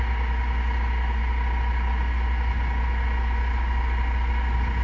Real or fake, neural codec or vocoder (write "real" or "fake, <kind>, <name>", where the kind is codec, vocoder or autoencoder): real